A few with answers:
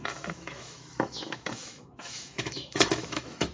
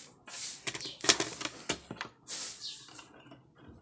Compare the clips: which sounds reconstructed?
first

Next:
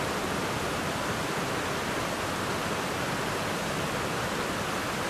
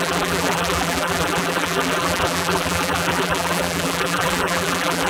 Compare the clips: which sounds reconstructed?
second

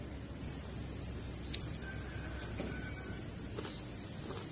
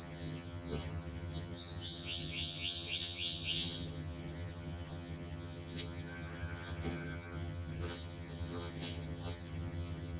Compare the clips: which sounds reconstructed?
second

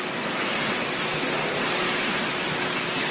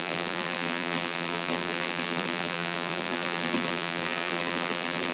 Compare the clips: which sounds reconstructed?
second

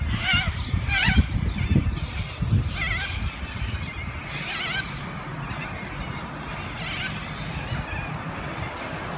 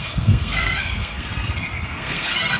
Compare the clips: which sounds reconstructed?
second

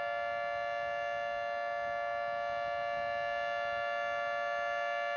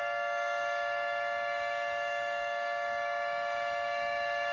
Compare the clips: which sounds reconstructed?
second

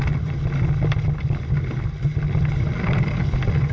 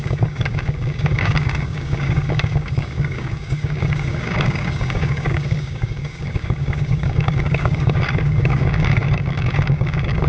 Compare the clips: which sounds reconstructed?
second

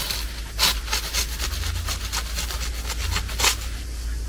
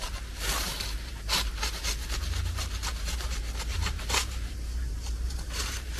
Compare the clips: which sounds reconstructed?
second